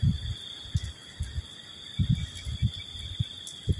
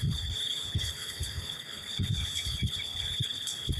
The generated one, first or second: second